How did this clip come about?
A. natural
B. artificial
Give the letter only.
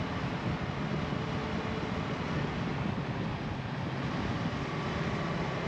A